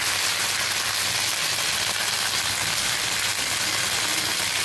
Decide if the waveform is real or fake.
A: real